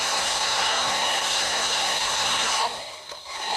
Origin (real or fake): fake